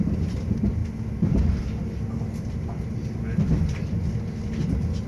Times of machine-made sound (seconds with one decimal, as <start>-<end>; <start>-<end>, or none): none